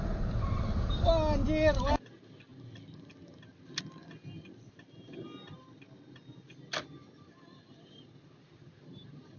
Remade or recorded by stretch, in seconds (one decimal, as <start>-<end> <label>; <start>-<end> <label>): 0.0-9.4 recorded